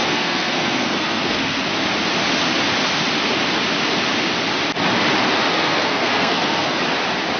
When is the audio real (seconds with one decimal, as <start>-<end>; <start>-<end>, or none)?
1.6-5.5; 6.8-7.4